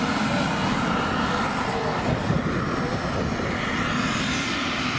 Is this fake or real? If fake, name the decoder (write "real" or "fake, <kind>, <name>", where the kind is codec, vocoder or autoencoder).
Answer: real